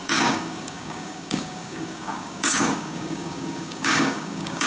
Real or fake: fake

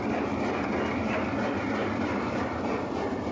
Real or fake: real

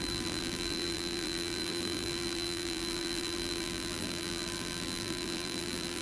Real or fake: fake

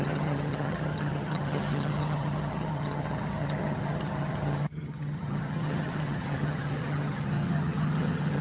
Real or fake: fake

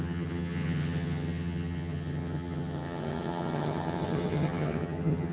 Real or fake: fake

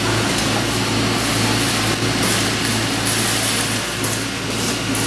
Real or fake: real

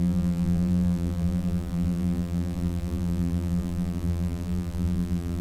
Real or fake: fake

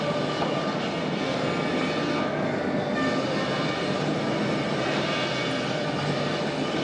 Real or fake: real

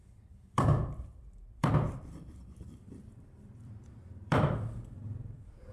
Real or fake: fake